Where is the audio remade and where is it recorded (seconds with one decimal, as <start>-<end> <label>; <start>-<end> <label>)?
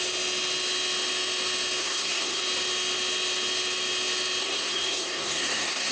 0.0-1.8 recorded; 1.8-2.4 remade; 2.4-4.4 recorded; 4.4-5.9 remade